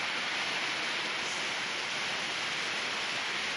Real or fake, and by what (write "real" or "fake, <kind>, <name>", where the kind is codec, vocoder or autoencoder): real